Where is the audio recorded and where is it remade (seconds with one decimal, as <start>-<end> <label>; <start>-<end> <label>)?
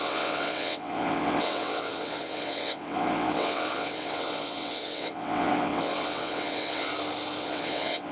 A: 0.0-6.9 remade; 6.9-7.4 recorded; 7.4-8.1 remade